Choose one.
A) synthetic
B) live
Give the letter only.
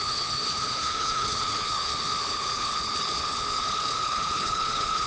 A